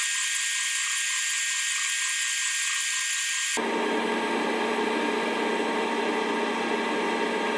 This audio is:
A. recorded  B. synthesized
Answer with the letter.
A